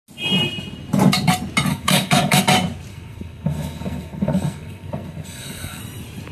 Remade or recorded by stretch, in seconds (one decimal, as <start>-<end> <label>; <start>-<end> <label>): 0.0-1.7 recorded; 1.7-2.4 remade; 2.4-2.9 recorded; 2.9-5.8 remade; 5.8-6.3 recorded